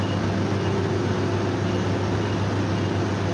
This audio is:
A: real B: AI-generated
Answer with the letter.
A